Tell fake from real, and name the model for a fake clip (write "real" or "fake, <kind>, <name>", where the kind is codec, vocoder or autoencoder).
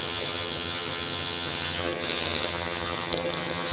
fake, vocoder, HiFi-GAN